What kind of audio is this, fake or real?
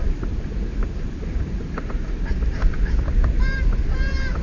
real